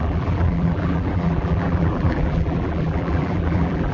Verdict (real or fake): fake